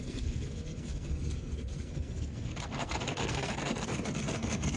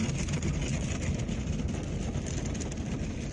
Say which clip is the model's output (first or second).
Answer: first